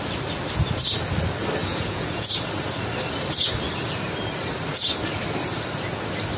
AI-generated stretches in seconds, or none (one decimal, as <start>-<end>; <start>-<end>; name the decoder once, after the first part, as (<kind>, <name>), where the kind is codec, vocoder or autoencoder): 1.6-2.3 (vocoder, Vocos)